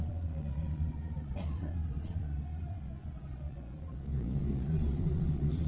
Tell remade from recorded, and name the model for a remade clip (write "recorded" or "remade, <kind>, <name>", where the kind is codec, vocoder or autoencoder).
remade, vocoder, Vocos